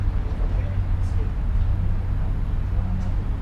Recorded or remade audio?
recorded